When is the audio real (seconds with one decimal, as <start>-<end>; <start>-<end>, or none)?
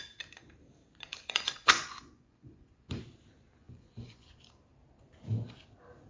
0.0-1.1; 3.0-3.6; 4.4-6.1